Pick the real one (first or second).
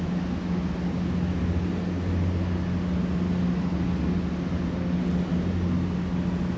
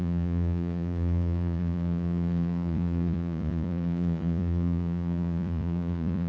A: first